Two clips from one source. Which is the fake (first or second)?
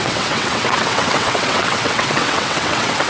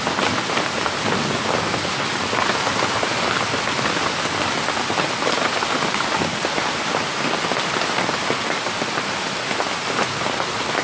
first